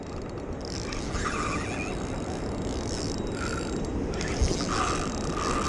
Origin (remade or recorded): recorded